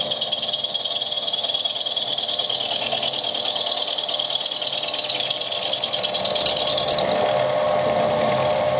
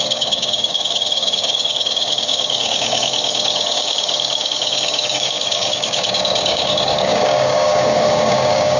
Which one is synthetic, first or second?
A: second